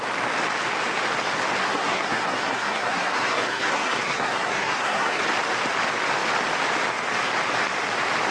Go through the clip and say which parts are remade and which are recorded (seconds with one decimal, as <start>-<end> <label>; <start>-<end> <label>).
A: 0.0-1.6 recorded; 1.6-5.2 remade; 5.2-8.3 recorded